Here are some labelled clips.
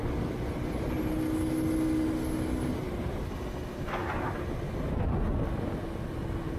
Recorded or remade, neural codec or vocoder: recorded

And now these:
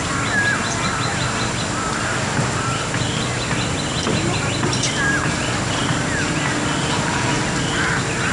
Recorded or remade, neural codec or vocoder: recorded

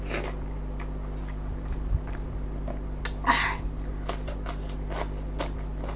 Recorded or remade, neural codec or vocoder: recorded